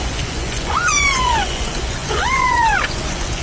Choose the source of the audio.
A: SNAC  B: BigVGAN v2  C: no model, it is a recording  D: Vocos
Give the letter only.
D